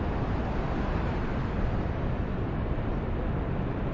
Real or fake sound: real